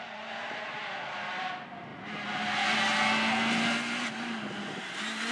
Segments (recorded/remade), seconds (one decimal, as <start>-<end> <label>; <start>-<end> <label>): 0.0-5.3 recorded